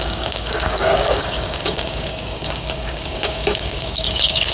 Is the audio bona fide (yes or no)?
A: no